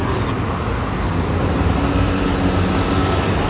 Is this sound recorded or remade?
recorded